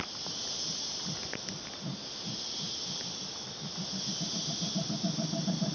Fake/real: real